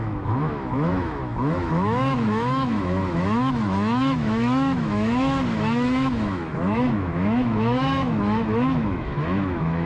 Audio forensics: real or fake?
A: fake